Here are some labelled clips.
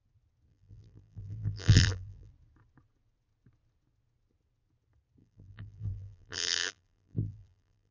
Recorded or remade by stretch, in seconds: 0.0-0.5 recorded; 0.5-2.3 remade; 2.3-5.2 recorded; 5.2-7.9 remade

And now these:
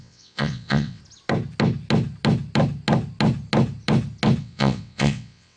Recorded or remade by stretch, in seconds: 0.0-1.0 remade; 1.0-4.4 recorded; 4.4-5.6 remade